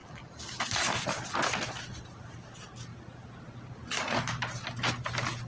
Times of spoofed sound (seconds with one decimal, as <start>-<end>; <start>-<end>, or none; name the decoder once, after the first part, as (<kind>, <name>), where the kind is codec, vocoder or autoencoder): 0.0-5.5 (vocoder, BigVGAN v2)